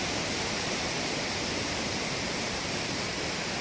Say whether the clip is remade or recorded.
remade